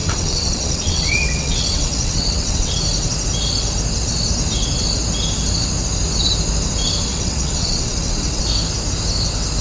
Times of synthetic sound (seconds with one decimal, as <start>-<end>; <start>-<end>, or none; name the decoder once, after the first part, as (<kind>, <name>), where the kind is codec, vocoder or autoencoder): 0.0-2.7 (vocoder, WaveNeXt); 7.1-8.4